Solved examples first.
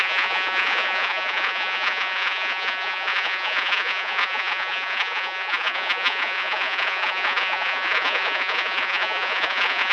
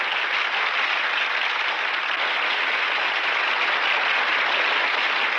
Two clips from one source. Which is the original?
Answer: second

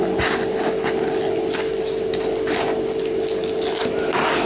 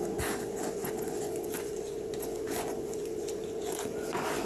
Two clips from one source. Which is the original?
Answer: first